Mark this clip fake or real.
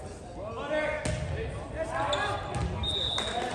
real